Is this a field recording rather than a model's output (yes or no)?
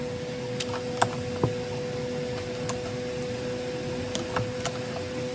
yes